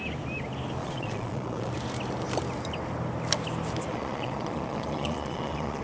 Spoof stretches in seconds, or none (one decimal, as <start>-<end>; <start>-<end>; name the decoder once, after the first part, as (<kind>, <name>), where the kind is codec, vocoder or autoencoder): 0.8-1.7 (vocoder, Vocos); 3.9-5.8